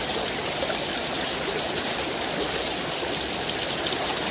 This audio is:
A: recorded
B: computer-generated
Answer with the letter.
A